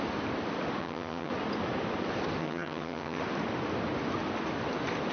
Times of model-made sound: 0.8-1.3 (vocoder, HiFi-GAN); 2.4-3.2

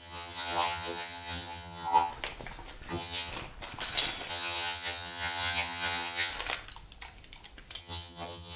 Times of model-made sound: 0.0-2.1 (vocoder, HiFi-GAN); 2.9-3.3; 4.3-6.3; 7.8-8.6

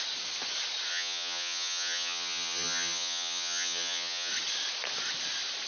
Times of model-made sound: 0.9-4.3 (vocoder, HiFi-GAN)

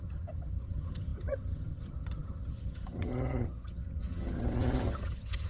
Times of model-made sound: 0.0-5.5 (vocoder, HiFi-GAN)